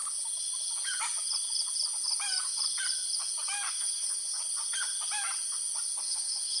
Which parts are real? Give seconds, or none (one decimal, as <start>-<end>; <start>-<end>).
0.0-3.7; 4.4-5.9